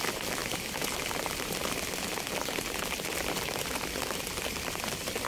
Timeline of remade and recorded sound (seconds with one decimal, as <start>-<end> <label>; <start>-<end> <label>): 0.0-0.4 remade; 0.4-3.6 recorded; 3.6-5.3 remade